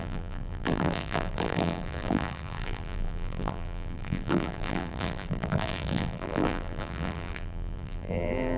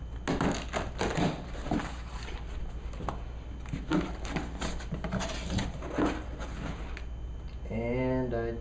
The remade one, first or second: first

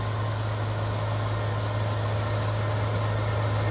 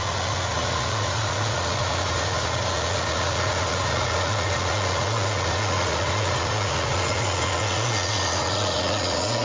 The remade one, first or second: second